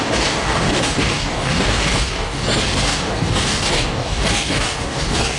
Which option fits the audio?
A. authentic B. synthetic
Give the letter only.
B